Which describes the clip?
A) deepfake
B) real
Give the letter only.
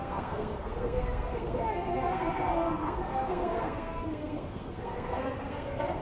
A